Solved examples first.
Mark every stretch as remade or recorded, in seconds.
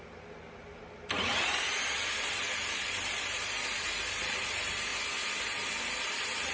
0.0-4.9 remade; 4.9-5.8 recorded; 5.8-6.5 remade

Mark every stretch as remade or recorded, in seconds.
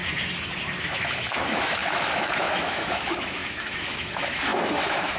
0.0-0.8 recorded; 0.8-5.2 remade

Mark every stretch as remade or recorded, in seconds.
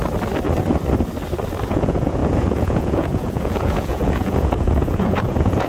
0.0-1.7 recorded; 1.7-5.7 remade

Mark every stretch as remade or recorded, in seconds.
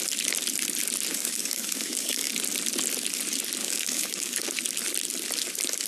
0.0-1.1 recorded; 1.1-2.3 remade; 2.3-3.6 recorded; 3.6-4.4 remade; 4.4-5.9 recorded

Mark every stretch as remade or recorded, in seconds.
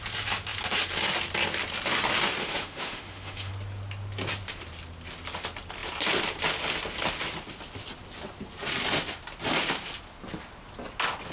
0.0-2.4 recorded; 2.4-3.5 remade; 3.5-11.3 recorded